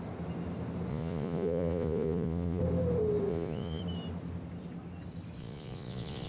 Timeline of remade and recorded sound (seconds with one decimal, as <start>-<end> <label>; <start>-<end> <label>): 0.0-0.9 recorded; 0.9-2.6 remade; 2.6-3.3 recorded; 3.3-3.8 remade; 3.8-5.4 recorded; 5.4-6.3 remade